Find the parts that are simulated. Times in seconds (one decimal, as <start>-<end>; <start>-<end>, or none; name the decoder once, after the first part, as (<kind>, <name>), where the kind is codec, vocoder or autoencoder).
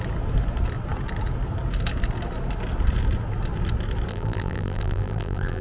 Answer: 4.1-5.6 (vocoder, BigVGAN v2)